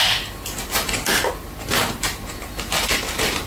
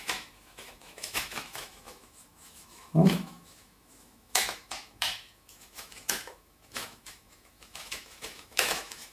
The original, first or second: first